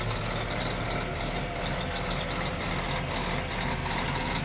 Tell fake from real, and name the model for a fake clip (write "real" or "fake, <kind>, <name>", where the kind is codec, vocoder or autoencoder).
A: real